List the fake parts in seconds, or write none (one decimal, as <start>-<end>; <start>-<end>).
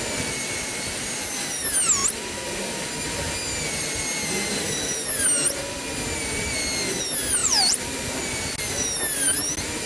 7.4-8.2